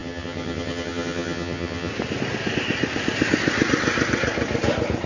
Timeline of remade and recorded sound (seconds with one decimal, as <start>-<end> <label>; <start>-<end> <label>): 0.0-1.9 remade; 1.9-5.1 recorded